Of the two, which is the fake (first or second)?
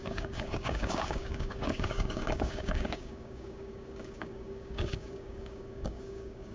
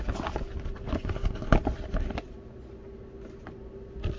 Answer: first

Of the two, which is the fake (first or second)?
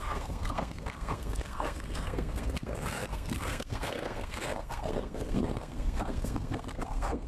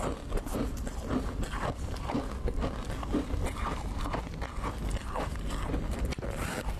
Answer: first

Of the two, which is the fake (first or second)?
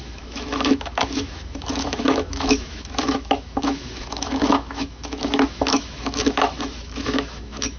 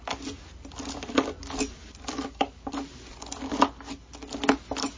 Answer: first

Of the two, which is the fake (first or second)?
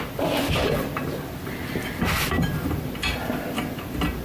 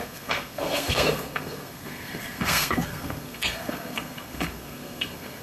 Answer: second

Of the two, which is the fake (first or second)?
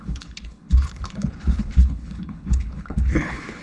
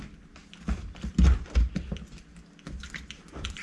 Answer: first